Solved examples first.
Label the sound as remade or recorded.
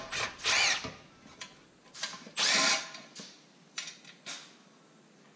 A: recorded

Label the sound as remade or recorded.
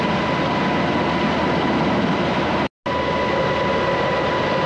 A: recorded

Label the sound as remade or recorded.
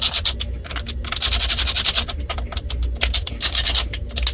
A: recorded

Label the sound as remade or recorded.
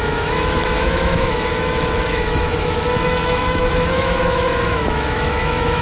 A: remade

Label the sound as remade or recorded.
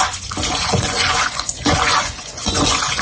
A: remade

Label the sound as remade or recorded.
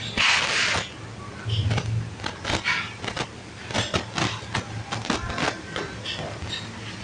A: recorded